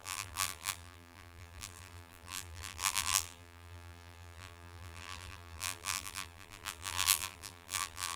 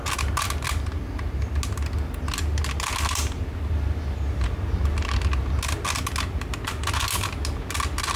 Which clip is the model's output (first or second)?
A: first